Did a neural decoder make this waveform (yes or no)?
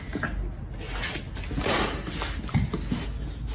no